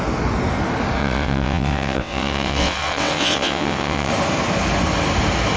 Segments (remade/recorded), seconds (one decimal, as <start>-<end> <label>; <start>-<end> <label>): 0.0-1.0 recorded; 1.0-4.1 remade; 4.1-5.6 recorded